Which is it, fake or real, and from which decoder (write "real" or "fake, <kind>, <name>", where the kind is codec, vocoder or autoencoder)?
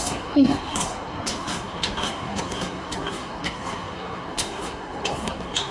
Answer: fake, codec, SNAC